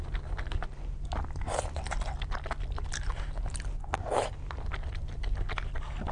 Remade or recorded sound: recorded